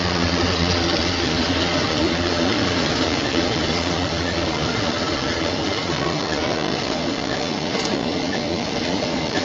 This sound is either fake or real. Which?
fake